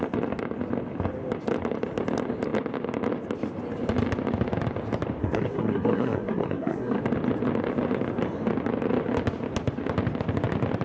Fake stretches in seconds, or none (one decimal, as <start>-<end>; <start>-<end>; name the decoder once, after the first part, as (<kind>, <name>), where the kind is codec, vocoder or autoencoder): 5.2-7.0 (codec, SNAC)